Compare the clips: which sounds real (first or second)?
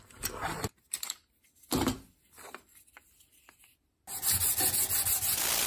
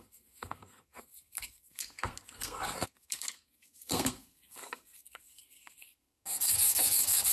first